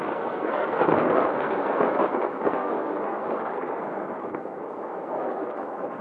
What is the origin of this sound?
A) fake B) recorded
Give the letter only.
A